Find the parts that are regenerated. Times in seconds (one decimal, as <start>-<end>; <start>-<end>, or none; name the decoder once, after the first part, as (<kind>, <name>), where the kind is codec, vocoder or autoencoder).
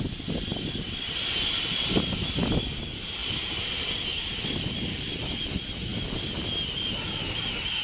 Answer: none